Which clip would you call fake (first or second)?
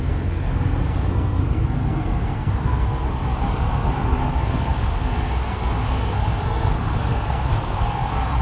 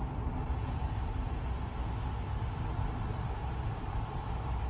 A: first